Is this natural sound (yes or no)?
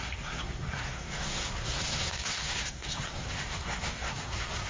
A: no